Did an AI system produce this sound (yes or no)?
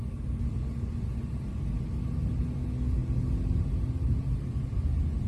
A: no